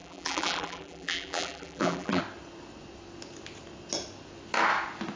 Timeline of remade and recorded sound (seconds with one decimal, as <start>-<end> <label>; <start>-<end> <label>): 0.0-2.2 remade; 2.2-5.2 recorded